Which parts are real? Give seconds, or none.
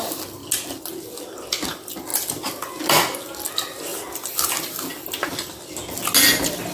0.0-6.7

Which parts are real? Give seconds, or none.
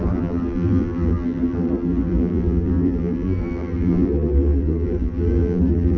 none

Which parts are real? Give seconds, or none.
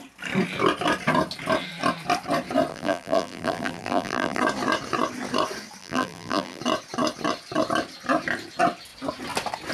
0.0-2.7; 4.4-5.8; 6.6-9.7